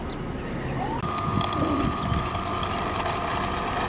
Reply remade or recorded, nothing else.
recorded